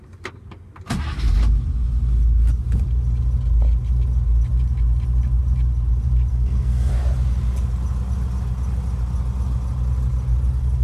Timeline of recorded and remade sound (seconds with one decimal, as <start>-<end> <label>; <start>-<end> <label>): 0.0-6.3 recorded; 6.3-6.9 remade; 6.9-10.8 recorded